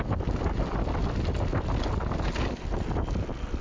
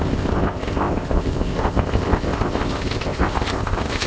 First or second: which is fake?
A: second